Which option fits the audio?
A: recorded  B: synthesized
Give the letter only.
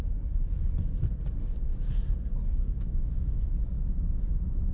B